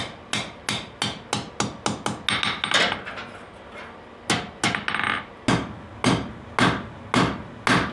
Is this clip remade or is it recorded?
recorded